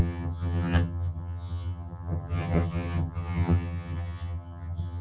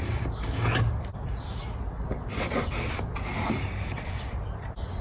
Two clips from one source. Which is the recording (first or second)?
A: second